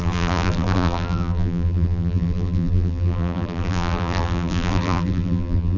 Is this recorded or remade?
remade